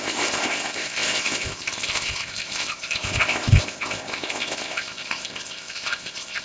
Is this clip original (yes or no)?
no